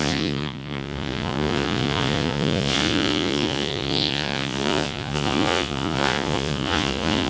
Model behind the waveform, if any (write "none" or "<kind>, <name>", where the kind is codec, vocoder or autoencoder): vocoder, Vocos